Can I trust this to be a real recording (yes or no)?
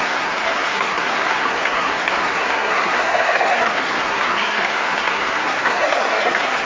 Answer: no